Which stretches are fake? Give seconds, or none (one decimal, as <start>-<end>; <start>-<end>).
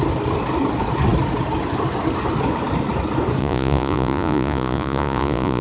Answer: 3.4-5.6